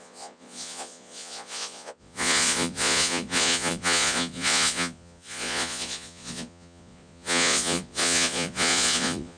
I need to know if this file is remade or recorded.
remade